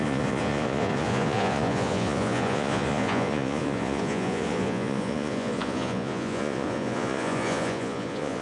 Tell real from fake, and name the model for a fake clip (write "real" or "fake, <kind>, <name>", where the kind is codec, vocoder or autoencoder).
fake, vocoder, Vocos